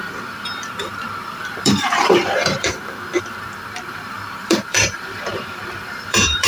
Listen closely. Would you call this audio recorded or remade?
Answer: remade